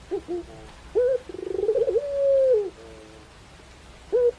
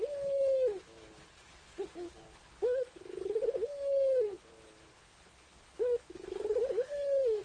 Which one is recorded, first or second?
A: first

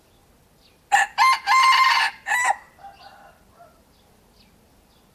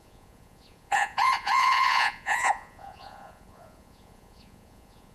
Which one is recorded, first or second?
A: first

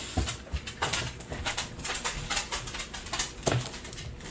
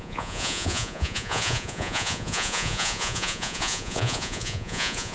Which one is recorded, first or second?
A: first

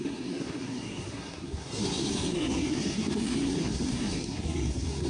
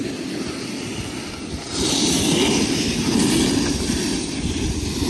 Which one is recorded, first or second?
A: second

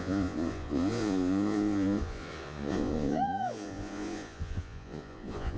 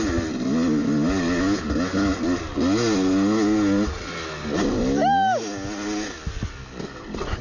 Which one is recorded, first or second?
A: second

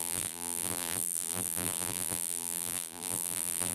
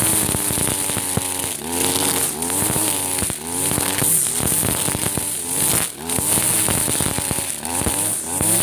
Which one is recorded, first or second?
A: second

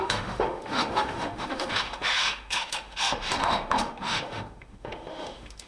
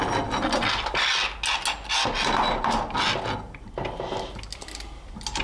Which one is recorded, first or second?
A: second